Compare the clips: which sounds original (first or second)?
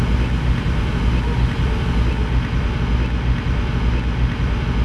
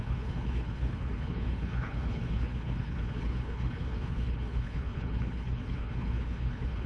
first